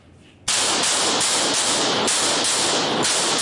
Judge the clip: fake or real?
real